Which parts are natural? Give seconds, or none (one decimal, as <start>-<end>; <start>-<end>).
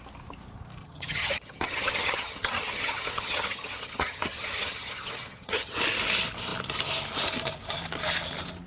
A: 0.0-0.8; 5.8-8.7